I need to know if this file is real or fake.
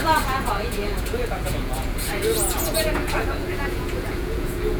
fake